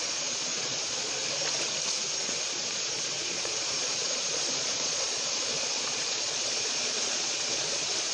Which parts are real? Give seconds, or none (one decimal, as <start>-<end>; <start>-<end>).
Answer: 1.2-2.2